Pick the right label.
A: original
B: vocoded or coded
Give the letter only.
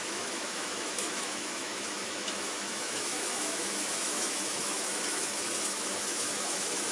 B